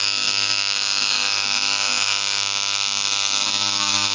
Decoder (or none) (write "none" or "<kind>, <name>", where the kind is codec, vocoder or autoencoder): codec, DAC